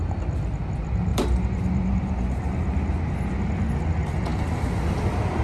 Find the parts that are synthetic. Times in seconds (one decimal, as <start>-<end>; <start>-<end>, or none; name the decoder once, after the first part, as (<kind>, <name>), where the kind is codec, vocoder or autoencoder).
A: 1.1-2.4 (vocoder, BigVGAN v2)